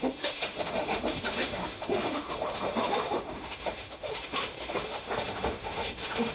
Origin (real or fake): fake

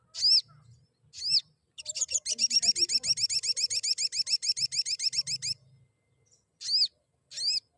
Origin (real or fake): real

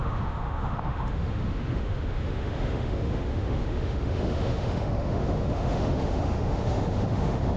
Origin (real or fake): fake